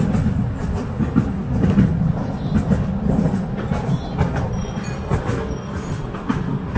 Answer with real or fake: real